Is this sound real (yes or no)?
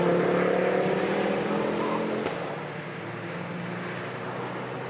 yes